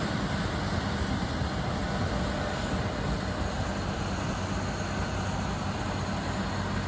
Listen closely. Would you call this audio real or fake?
real